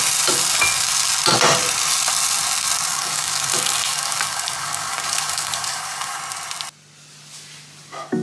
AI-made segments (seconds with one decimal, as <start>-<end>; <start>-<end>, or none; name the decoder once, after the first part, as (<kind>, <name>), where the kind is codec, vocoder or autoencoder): 2.9-6.2 (codec, DAC)